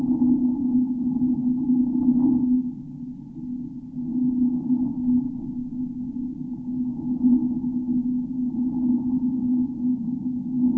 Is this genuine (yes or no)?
yes